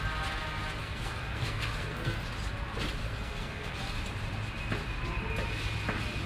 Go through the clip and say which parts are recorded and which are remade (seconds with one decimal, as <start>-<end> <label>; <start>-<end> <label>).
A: 0.0-0.8 recorded; 0.8-2.2 remade; 2.2-3.0 recorded; 3.0-3.8 remade; 3.8-6.3 recorded